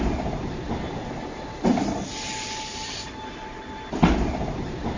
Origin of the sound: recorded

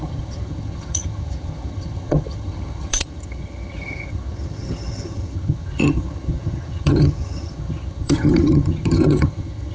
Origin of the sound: remade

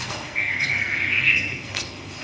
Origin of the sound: remade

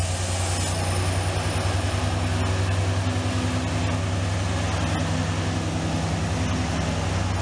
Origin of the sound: recorded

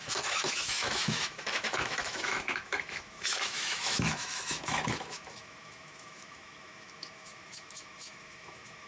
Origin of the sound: remade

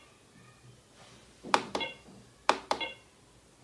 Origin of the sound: recorded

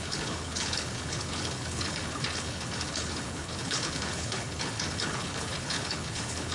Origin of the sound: remade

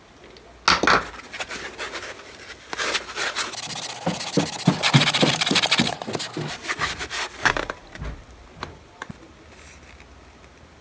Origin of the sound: recorded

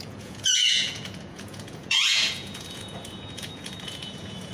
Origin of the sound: remade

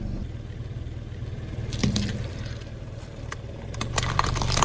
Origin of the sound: remade